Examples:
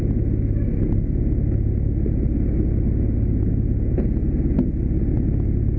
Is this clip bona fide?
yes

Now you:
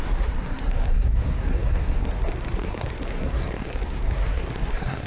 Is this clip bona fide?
no